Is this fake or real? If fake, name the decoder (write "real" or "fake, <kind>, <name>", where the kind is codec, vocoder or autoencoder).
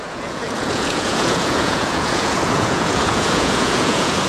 fake, vocoder, Vocos